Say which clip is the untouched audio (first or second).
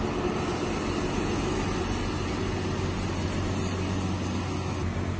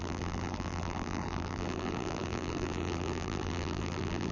first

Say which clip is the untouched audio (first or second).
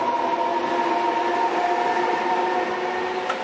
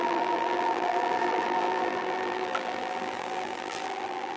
first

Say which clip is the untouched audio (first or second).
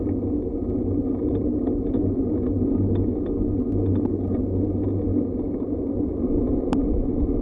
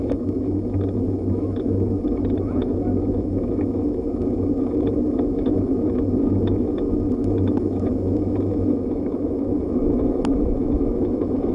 first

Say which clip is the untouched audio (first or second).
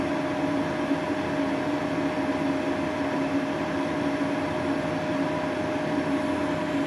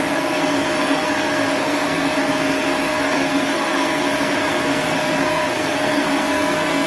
first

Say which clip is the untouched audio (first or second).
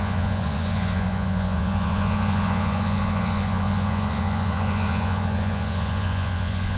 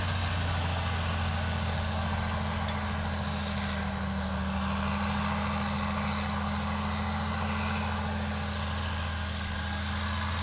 second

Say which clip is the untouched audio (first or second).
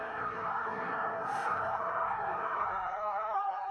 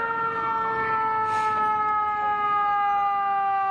second